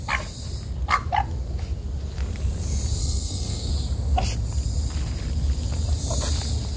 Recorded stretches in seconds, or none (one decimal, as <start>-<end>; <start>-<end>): 0.0-3.0; 3.7-6.8